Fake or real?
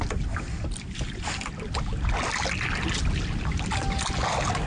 real